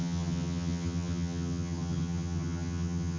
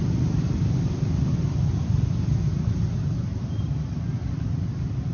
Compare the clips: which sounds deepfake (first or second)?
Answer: first